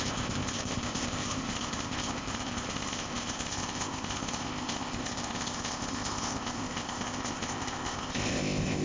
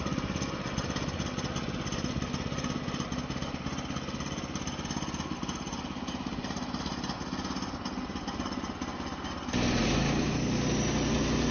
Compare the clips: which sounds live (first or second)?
second